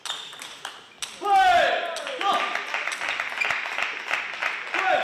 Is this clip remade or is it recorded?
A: recorded